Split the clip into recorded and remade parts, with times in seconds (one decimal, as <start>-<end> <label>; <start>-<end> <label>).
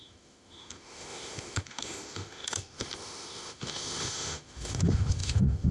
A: 0.0-5.7 remade